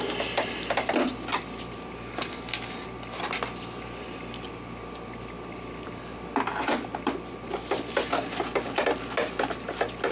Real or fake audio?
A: real